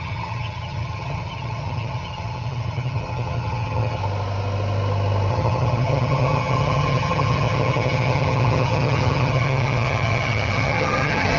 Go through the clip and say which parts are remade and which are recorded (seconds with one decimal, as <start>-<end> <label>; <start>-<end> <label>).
0.0-4.0 remade; 4.0-5.3 recorded; 5.3-11.4 remade